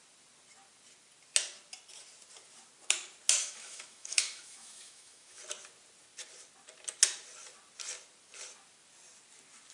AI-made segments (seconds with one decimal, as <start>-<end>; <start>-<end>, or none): 3.4-5.4